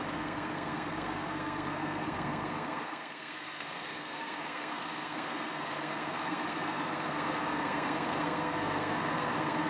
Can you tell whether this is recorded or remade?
remade